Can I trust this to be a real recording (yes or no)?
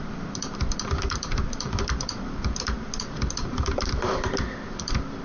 no